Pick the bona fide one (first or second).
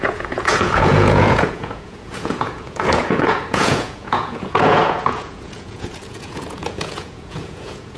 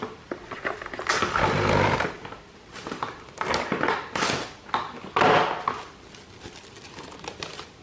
second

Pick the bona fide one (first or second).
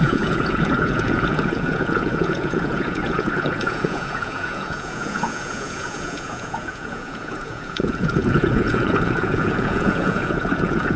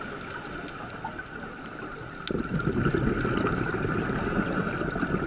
second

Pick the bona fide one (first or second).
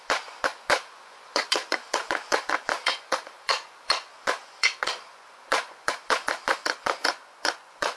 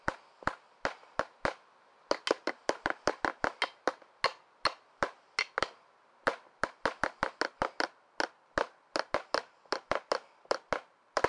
second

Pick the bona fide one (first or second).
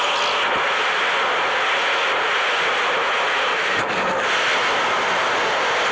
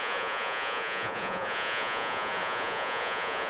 first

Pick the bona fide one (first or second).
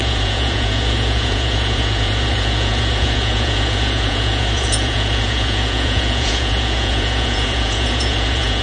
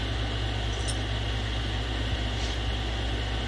second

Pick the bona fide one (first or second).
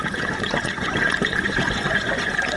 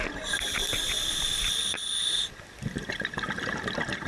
second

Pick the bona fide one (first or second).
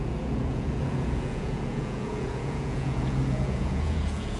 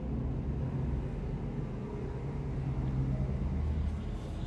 second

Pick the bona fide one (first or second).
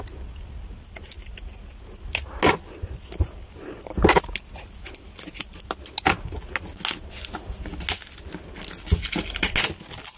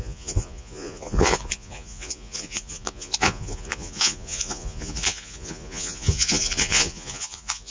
first